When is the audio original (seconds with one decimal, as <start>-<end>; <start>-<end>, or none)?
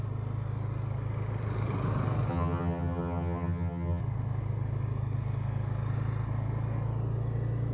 0.0-2.3; 4.0-7.7